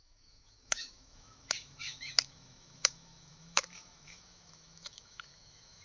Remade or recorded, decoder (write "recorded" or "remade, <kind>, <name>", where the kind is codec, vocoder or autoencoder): remade, autoencoder, DAC-VAE